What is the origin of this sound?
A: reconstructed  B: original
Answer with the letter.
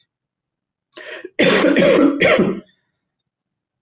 B